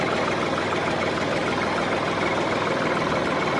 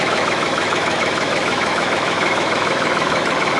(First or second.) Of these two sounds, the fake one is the second